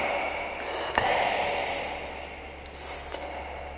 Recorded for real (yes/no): yes